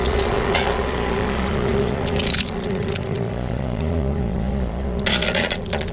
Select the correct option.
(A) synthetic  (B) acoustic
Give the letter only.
A